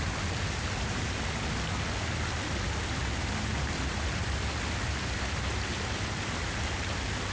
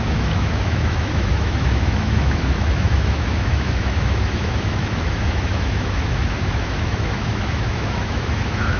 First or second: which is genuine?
first